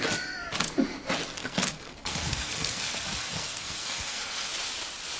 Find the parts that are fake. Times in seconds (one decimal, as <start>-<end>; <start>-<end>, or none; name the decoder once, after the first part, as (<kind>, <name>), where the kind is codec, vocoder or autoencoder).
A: 1.4-4.5 (codec, SNAC)